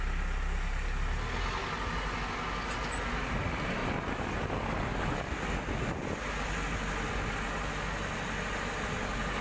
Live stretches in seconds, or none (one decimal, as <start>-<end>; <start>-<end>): 0.0-9.4

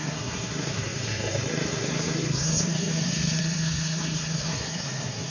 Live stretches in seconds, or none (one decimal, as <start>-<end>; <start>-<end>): none

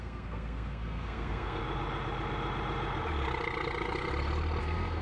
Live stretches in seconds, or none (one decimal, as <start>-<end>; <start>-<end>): 1.6-4.6

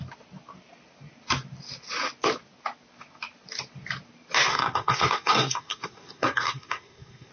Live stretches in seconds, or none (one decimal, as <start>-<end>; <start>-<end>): 0.0-4.5

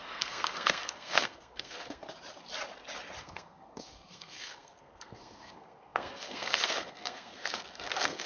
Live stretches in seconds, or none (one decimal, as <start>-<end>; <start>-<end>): 2.0-3.2

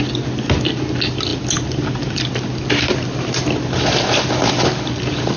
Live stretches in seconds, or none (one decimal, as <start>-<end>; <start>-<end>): 0.0-5.4